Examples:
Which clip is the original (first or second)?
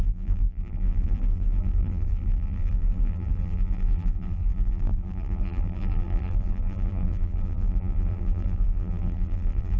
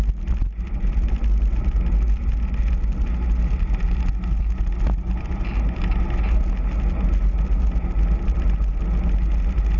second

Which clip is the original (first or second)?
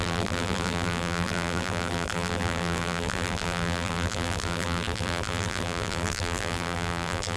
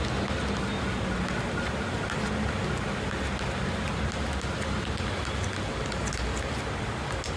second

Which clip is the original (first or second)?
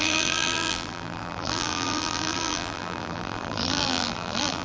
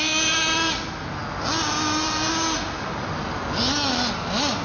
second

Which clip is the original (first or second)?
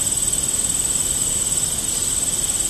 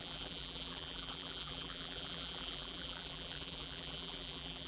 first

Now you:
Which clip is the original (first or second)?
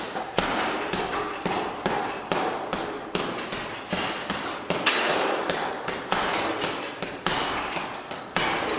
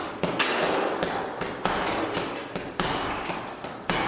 second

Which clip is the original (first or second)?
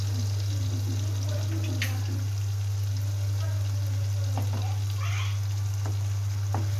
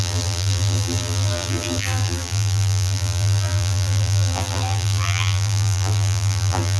first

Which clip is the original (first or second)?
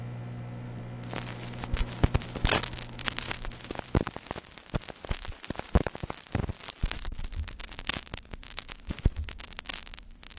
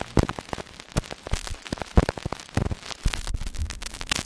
second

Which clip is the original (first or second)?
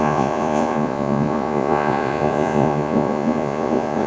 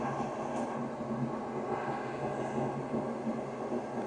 second